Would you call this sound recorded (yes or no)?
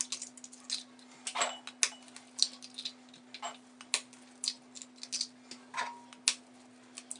yes